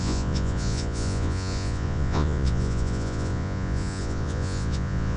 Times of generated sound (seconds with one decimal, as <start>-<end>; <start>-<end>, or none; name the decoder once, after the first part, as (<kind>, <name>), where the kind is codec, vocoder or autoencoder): 0.0-5.2 (vocoder, Vocos)

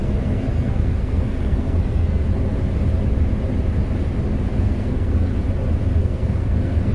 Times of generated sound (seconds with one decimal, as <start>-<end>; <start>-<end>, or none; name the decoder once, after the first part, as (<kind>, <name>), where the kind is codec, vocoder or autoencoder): 0.0-2.2 (codec, SNAC); 4.6-5.3; 6.0-6.9

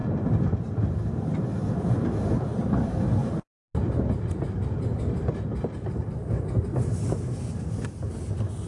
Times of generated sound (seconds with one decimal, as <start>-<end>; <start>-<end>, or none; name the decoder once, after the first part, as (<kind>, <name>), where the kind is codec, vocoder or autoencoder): none

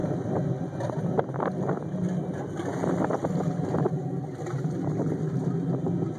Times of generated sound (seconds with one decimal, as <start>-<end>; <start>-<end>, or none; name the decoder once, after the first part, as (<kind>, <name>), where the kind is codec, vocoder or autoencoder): none

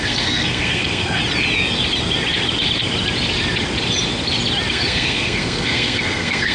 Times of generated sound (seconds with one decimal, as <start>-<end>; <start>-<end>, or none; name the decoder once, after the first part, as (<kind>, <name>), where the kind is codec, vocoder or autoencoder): 0.0-1.2 (codec, SNAC); 4.7-6.5